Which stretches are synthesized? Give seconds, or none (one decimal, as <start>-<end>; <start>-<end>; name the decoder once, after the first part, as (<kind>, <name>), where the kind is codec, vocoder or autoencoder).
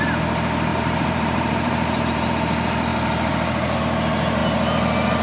0.7-2.3 (vocoder, BigVGAN v2)